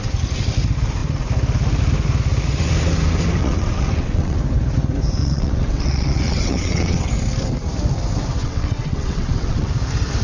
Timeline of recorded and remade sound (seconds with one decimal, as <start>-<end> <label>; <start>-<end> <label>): 0.0-3.4 recorded; 3.4-4.4 remade; 4.4-5.2 recorded; 5.2-7.1 remade; 7.1-8.4 recorded; 8.4-9.7 remade; 9.7-10.2 recorded